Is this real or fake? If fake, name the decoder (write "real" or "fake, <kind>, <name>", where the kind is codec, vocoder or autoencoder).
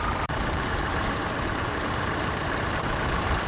fake, vocoder, BigVGAN v2